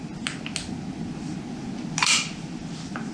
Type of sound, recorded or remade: recorded